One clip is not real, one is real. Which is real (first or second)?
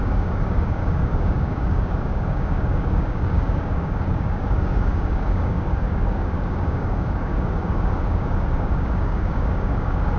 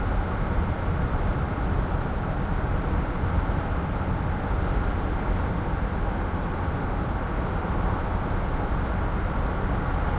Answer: second